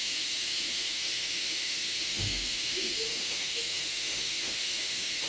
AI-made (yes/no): yes